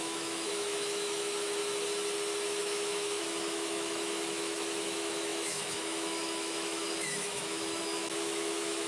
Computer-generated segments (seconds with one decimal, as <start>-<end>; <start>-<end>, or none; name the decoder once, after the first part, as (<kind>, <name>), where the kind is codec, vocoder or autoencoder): 0.0-1.6 (autoencoder, DAC-VAE); 2.6-8.9

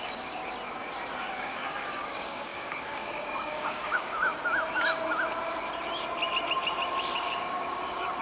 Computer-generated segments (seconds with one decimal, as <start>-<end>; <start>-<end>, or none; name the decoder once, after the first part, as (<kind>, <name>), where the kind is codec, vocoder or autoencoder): 0.0-0.4 (codec, DAC); 1.2-4.3; 7.0-8.2

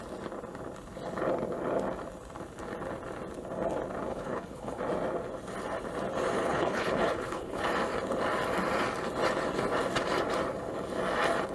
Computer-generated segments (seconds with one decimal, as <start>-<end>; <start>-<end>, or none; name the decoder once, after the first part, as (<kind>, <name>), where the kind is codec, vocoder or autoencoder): 4.1-4.8 (codec, HILCodec); 6.4-7.6

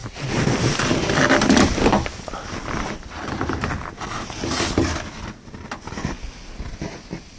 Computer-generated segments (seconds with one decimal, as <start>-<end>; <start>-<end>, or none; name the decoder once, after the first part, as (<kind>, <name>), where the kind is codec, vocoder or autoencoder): 0.0-2.8 (vocoder, BigVGAN v2)

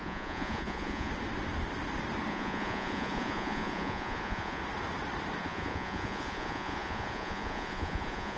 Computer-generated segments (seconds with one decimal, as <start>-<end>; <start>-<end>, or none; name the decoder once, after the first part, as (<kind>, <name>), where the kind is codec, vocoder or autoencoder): 0.0-1.1 (vocoder, Vocos); 2.3-4.6; 5.4-8.4

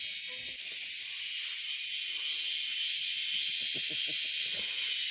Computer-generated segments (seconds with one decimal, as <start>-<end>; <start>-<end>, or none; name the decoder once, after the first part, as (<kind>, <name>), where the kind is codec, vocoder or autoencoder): none

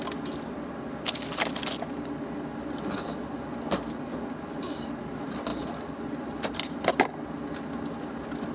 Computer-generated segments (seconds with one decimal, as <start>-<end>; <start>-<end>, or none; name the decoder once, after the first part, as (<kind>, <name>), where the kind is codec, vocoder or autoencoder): none

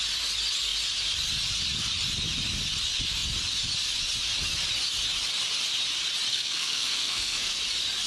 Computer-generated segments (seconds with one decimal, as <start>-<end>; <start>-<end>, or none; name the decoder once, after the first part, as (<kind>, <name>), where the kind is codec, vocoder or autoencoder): 6.3-7.6 (codec, SNAC)